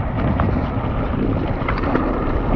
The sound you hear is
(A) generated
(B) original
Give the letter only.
B